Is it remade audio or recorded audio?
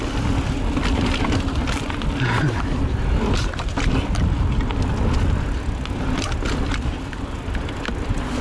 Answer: recorded